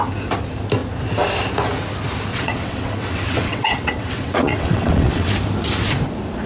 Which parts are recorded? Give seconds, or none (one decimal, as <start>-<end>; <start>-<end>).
0.0-2.3; 5.3-6.5

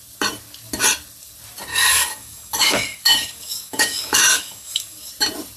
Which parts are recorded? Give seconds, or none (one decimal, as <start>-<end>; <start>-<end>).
0.0-1.7; 5.1-5.6

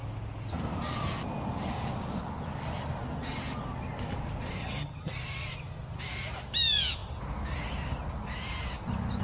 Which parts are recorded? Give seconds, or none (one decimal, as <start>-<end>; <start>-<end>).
0.0-4.6; 5.1-9.2

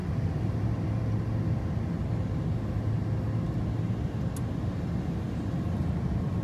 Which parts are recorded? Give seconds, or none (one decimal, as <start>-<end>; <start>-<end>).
0.0-6.4

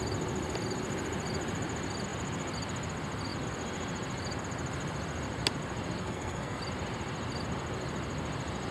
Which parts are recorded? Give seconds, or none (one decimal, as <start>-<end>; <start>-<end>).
0.0-6.0; 6.6-8.7

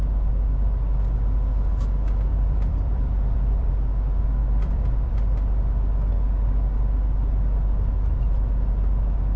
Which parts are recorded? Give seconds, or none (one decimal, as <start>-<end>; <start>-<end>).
0.0-2.3; 3.7-4.4; 5.1-9.4

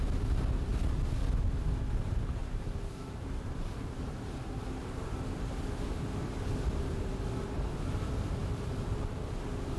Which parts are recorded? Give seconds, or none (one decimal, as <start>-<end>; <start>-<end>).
0.0-2.4; 4.6-8.4; 9.3-9.8

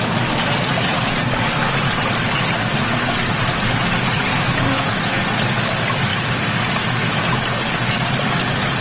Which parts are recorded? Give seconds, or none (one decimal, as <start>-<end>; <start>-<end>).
0.0-4.3; 5.3-8.8